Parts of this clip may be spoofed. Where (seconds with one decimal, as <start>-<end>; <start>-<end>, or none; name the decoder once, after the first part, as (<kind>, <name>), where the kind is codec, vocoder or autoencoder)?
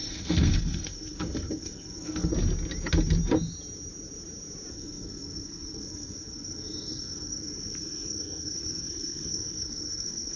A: 0.0-2.3 (codec, SNAC); 4.7-10.4